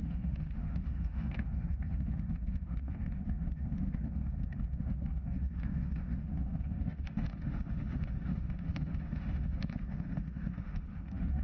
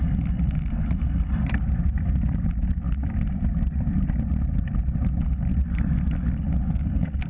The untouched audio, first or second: second